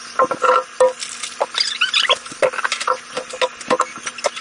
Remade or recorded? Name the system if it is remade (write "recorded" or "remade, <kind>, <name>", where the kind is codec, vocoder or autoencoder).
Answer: recorded